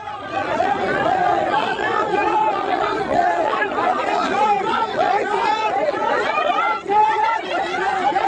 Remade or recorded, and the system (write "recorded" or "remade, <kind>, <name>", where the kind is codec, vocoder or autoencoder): remade, vocoder, Vocos